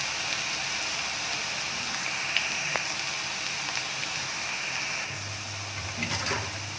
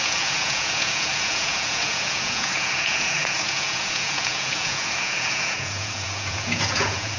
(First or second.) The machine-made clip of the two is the second